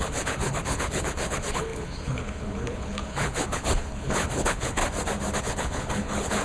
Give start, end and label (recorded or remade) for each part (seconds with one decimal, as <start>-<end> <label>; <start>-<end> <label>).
0.0-4.8 remade; 4.8-5.4 recorded; 5.4-6.4 remade